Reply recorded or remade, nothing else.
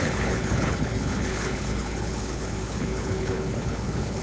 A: remade